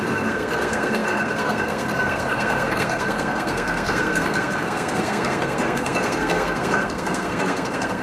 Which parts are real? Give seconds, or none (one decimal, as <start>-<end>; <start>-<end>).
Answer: none